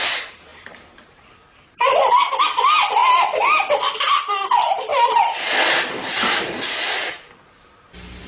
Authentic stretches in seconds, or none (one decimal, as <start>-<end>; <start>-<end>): 0.0-0.5; 2.3-4.9; 7.8-8.3